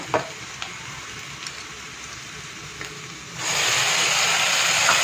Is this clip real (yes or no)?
yes